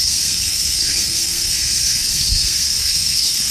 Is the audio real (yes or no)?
no